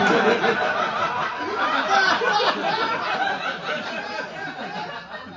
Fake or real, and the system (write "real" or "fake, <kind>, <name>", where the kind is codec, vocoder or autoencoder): real